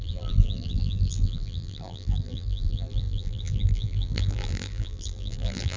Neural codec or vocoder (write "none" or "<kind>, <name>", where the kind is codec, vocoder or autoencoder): vocoder, BigVGAN v2